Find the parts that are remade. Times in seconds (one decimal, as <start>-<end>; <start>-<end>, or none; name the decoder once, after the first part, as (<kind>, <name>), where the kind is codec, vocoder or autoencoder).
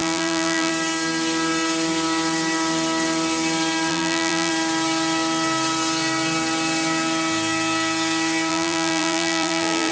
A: 0.0-0.7 (vocoder, BigVGAN v2); 3.9-4.5; 8.5-9.9